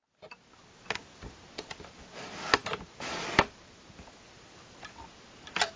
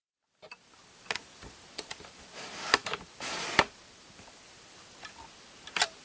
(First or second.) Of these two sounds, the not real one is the second